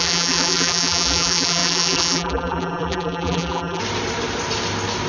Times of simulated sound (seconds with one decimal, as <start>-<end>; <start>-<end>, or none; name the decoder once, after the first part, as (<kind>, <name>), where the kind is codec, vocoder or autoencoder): 0.0-3.8 (vocoder, BigVGAN v2)